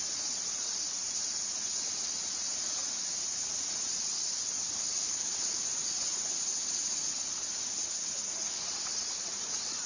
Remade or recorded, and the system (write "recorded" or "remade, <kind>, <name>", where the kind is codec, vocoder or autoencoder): remade, vocoder, Vocos